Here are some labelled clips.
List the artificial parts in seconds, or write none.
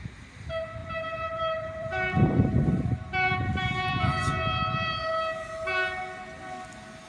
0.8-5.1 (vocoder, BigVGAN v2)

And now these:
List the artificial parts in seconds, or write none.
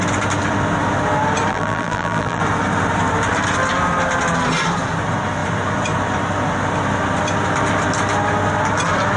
1.5-2.4 (vocoder, BigVGAN v2)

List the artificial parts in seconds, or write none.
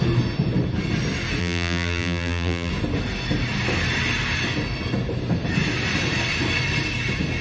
1.4-2.7 (vocoder, BigVGAN v2)